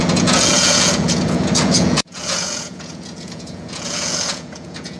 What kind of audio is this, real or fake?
fake